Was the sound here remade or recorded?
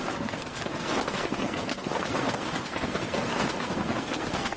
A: remade